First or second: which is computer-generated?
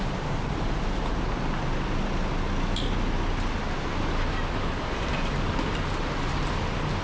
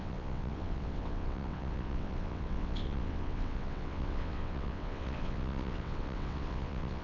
second